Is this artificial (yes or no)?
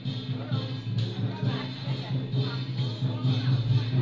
no